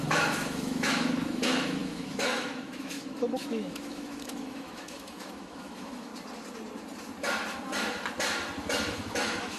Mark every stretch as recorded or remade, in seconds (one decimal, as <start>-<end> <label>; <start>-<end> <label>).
0.0-6.1 remade; 6.1-8.9 recorded; 8.9-9.6 remade